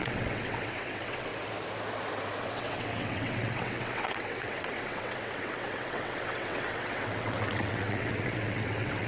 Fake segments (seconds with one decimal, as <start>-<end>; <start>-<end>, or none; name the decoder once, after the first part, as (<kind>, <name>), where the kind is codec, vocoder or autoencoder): 0.0-1.3 (vocoder, WaveNeXt); 2.4-9.1